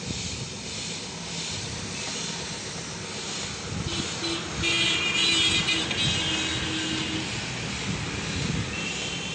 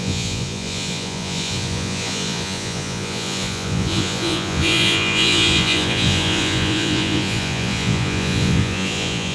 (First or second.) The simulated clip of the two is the second